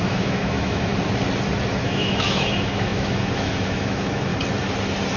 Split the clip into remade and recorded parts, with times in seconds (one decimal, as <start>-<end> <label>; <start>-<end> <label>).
0.0-0.9 remade; 0.9-1.7 recorded; 1.7-4.3 remade; 4.3-5.2 recorded